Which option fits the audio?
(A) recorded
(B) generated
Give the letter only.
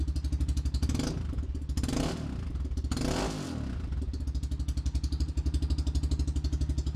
A